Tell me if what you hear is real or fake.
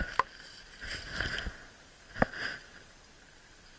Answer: real